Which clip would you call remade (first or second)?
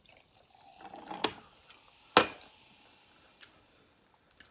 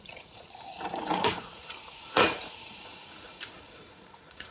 second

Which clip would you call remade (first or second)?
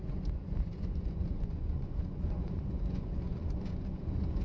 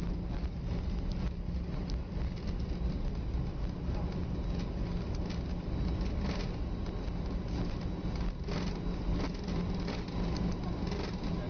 first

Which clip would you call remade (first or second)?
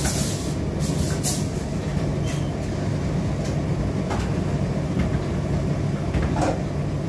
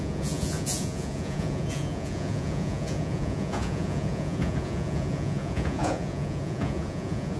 second